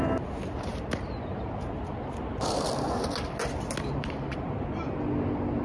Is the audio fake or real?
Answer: real